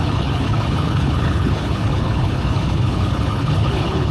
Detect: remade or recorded remade